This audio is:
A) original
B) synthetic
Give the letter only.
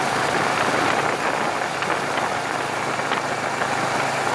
A